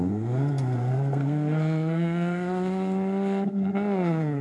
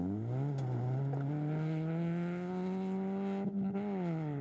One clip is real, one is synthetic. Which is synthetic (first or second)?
first